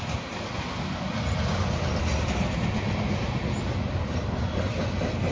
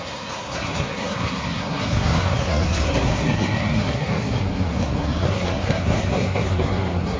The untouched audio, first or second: first